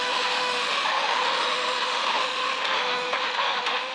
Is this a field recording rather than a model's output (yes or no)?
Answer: no